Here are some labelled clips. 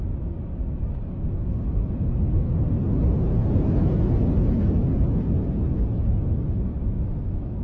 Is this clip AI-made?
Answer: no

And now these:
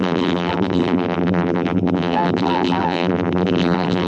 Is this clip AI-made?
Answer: yes